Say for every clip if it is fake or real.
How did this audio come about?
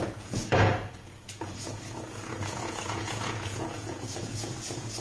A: fake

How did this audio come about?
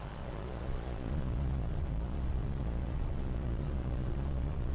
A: fake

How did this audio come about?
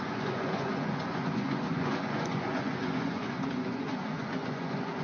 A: fake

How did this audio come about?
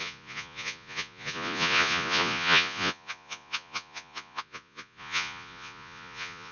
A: fake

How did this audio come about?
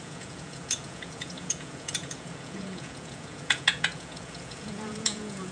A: fake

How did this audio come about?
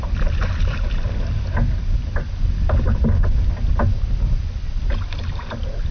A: real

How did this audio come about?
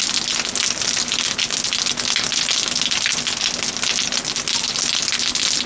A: real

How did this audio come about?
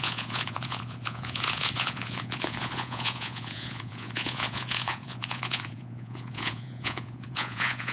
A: fake